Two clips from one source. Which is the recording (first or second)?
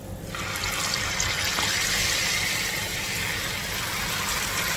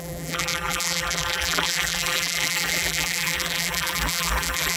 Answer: first